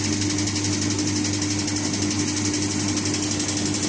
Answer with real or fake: real